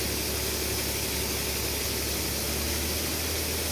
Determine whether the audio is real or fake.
real